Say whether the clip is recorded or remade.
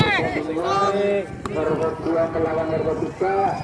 recorded